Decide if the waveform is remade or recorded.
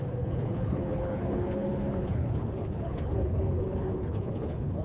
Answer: remade